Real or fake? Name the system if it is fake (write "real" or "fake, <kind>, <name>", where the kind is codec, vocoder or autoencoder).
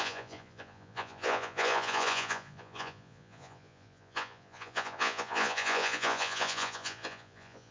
fake, vocoder, Vocos